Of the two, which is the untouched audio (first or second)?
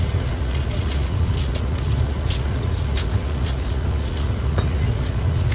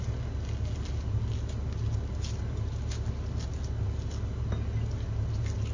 second